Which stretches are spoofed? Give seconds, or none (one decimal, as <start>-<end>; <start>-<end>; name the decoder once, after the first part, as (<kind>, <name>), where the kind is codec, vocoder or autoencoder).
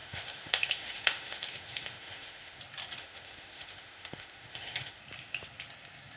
0.0-2.6 (autoencoder, DAC-VAE); 3.0-5.0